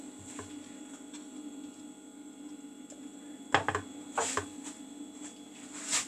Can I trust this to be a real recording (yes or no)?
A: yes